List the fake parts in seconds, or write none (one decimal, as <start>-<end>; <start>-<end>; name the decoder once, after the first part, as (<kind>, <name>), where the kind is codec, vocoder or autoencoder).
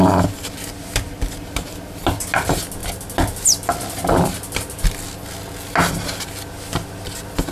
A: none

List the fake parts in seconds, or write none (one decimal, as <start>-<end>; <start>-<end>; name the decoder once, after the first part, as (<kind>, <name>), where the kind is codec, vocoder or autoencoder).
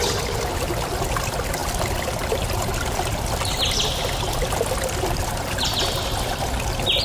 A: none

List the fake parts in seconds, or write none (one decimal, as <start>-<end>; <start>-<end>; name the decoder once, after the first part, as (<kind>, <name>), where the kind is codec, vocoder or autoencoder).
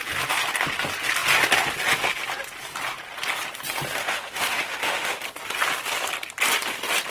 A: 4.0-5.2 (autoencoder, DAC-VAE)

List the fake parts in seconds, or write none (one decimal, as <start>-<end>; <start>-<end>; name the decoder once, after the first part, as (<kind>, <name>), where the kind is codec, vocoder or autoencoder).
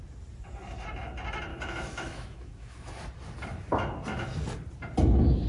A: 1.5-3.0 (autoencoder, DAC-VAE)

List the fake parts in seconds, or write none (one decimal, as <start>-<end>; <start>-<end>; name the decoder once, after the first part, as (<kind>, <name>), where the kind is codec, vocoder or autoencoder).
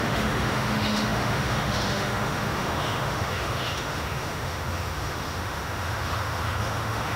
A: 0.0-7.2 (autoencoder, DAC-VAE)